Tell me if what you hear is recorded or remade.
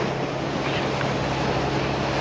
recorded